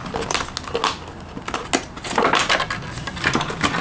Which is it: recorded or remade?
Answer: recorded